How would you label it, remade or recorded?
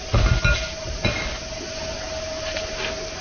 recorded